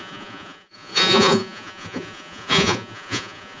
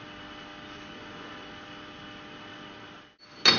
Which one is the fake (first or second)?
first